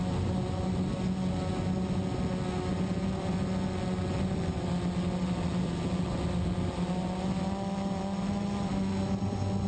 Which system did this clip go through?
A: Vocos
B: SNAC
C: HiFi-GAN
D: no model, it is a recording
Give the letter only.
D